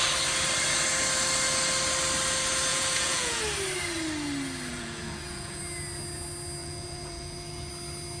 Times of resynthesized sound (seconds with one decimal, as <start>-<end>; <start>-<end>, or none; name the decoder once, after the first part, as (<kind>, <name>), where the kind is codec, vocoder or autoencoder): 2.7-3.4 (vocoder, Vocos); 4.7-5.6; 6.6-7.7